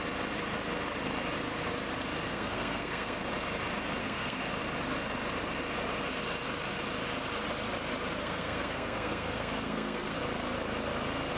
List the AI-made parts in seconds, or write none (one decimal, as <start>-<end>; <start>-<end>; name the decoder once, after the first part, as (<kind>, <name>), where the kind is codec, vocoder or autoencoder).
2.3-3.2 (codec, SNAC); 4.0-4.5; 8.2-10.2